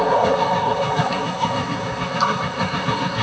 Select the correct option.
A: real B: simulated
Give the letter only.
B